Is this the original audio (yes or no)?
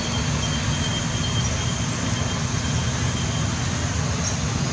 yes